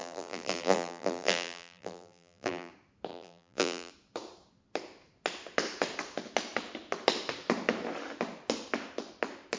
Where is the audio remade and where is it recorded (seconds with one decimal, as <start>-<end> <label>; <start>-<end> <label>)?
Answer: 0.0-2.7 remade; 2.7-3.1 recorded; 3.1-3.9 remade; 3.9-9.6 recorded